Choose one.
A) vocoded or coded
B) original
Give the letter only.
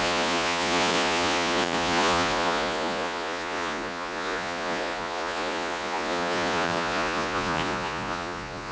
A